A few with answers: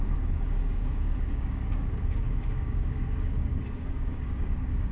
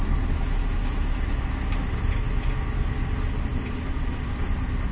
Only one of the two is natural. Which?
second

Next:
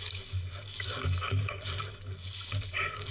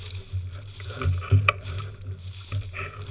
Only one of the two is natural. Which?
second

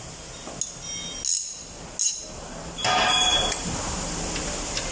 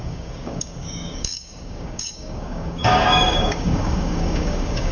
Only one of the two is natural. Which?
first